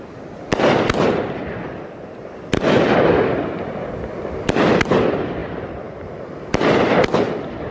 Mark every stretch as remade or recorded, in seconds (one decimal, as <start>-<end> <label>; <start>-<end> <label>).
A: 0.0-7.7 recorded